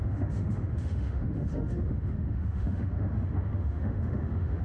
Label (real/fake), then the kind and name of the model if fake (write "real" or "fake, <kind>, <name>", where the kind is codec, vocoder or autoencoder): fake, autoencoder, DAC-VAE